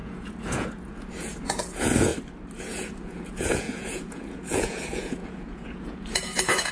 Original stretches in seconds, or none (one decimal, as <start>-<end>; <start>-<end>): 2.1-2.6